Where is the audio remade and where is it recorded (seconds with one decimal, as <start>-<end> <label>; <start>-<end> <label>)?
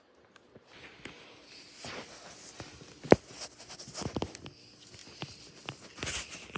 0.0-6.6 recorded